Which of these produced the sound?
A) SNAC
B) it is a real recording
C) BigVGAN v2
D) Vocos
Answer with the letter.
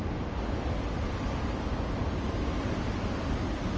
B